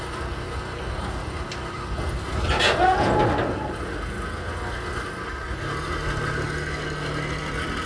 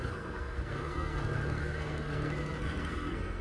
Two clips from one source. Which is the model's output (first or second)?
second